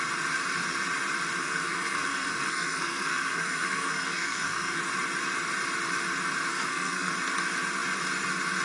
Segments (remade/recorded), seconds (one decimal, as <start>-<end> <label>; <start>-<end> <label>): 0.0-1.4 recorded; 1.4-4.8 remade; 4.8-6.5 recorded; 6.5-7.1 remade; 7.1-8.6 recorded